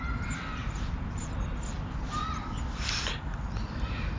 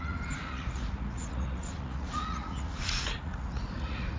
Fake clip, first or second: second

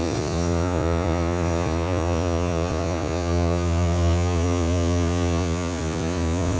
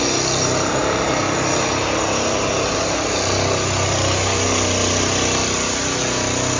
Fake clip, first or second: first